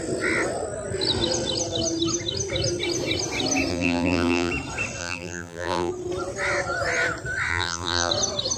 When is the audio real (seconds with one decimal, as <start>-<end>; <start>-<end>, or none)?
0.0-3.7; 4.5-5.0; 5.9-7.5; 8.1-8.6

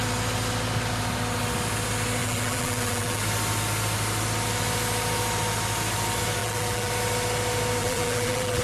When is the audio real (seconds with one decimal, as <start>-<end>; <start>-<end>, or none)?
0.0-2.2; 3.2-6.4; 6.9-7.8

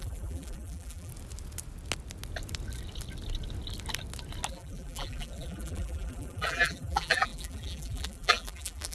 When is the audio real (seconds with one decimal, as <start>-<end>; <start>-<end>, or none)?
1.1-4.5

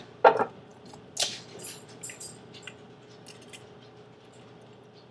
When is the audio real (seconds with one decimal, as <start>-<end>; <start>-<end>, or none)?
0.0-5.1